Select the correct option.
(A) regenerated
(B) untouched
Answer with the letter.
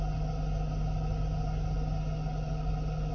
B